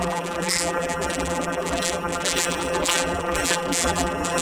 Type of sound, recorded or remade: remade